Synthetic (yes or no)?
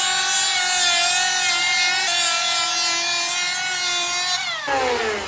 no